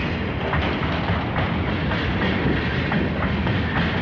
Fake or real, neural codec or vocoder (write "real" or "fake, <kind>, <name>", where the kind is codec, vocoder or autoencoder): real